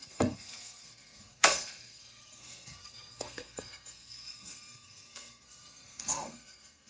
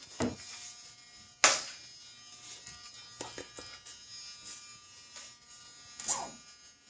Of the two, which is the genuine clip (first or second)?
second